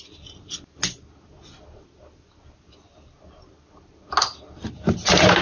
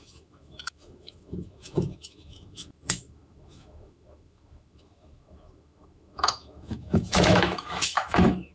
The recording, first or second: first